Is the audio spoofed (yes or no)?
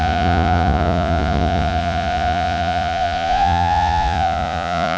yes